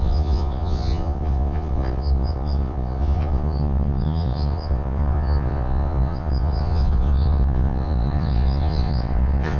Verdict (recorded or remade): remade